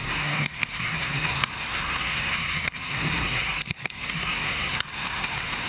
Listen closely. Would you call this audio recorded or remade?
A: remade